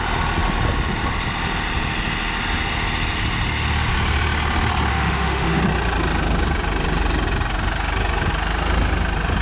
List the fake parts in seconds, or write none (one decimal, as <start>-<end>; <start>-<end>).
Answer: 4.9-5.6